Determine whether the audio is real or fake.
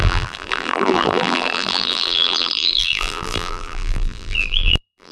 fake